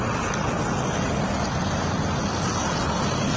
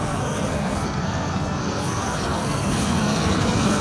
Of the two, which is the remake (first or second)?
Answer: second